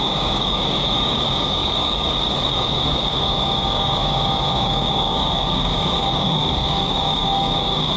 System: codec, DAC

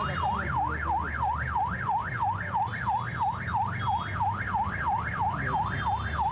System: none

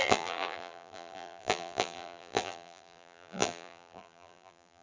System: vocoder, BigVGAN v2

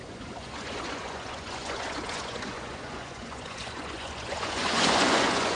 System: vocoder, Vocos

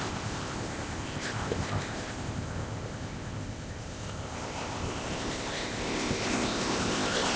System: codec, ZipCodec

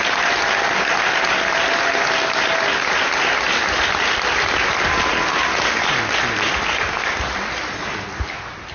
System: none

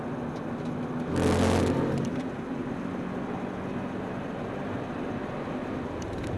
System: none